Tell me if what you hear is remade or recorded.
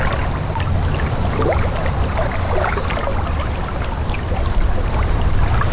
recorded